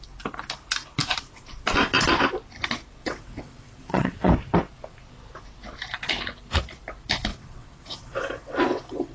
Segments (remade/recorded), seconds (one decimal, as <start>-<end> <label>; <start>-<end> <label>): 0.0-3.0 recorded; 3.0-4.3 remade; 4.3-7.3 recorded; 7.3-9.1 remade